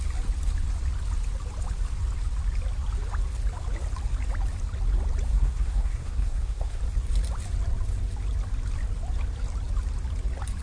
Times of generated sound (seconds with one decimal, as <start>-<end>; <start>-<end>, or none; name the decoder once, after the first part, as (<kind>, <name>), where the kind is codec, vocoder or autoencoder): 5.3-6.8 (codec, SNAC)

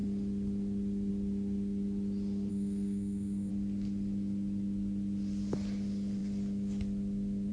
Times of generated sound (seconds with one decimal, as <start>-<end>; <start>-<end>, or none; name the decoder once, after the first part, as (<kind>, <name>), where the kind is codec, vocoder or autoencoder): 2.5-3.5 (codec, SNAC)

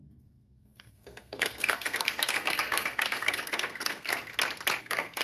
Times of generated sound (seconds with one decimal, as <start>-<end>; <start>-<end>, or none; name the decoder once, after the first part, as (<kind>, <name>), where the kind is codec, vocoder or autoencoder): 0.0-4.3 (codec, SNAC); 4.8-5.2

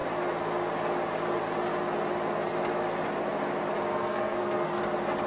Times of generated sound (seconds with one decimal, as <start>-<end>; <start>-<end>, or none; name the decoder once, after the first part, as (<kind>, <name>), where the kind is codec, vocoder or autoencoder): 3.9-4.8 (codec, SNAC)

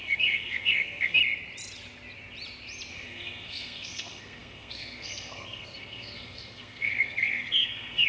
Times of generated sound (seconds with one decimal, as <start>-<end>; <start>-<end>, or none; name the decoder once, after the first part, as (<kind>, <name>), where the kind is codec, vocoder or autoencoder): 0.0-1.2 (codec, SNAC); 2.9-8.1

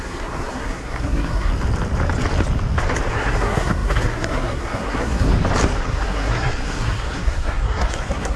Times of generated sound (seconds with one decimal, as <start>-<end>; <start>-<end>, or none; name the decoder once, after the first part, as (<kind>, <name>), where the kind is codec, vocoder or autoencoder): 0.0-1.5 (codec, SNAC); 3.1-5.3; 5.8-8.4

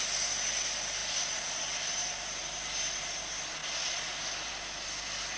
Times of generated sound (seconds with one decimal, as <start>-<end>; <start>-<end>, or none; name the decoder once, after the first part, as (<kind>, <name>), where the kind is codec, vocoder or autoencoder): none

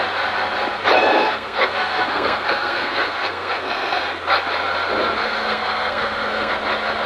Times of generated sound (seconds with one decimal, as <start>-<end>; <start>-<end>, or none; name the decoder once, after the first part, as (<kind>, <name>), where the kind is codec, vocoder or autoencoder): 1.1-4.0 (codec, SNAC); 5.2-6.5